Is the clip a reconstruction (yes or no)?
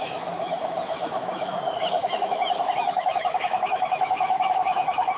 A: yes